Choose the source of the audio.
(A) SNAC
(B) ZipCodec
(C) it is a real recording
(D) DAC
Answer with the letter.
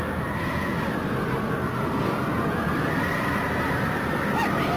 C